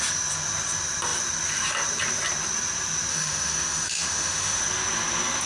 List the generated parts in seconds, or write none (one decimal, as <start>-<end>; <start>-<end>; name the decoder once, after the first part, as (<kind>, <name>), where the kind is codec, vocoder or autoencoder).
3.1-4.6 (autoencoder, DAC-VAE)